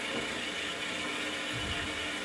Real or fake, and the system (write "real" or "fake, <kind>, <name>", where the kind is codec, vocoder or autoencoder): real